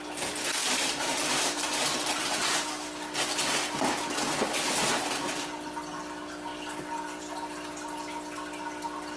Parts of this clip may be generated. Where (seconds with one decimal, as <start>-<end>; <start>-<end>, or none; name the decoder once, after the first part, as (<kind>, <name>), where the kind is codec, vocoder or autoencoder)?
0.6-2.7 (vocoder, BigVGAN v2)